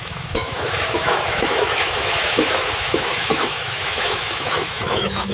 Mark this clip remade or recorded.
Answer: remade